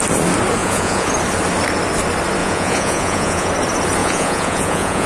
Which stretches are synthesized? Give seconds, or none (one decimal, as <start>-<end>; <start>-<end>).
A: 0.6-1.1; 2.4-3.5; 4.0-5.1